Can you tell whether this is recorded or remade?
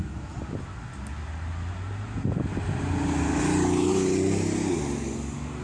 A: recorded